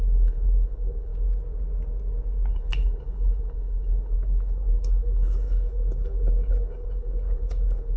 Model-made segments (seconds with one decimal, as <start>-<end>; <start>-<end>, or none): 0.0-1.1; 2.5-8.0